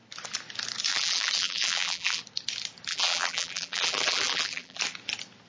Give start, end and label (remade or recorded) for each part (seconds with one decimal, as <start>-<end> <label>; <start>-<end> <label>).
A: 0.0-0.9 recorded; 0.9-2.2 remade; 2.2-2.9 recorded; 2.9-4.8 remade; 4.8-5.5 recorded